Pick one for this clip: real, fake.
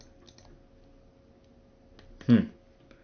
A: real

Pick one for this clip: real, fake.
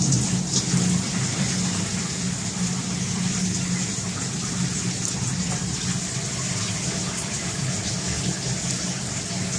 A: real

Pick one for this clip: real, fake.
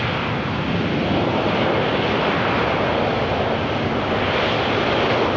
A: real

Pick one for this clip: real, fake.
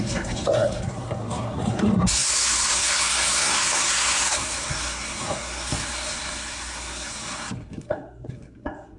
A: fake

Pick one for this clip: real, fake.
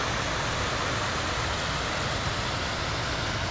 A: real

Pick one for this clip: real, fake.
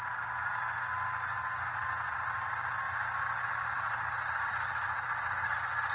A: real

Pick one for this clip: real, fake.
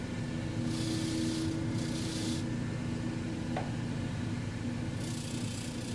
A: real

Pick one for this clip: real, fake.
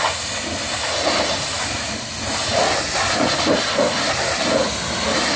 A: real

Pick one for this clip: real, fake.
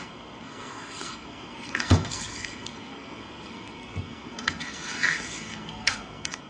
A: fake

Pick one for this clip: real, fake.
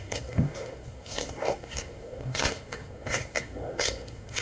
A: fake